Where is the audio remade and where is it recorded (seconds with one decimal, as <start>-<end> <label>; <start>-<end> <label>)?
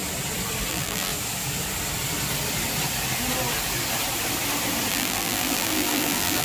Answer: 0.0-0.7 recorded; 0.7-1.1 remade; 1.1-4.9 recorded; 4.9-6.4 remade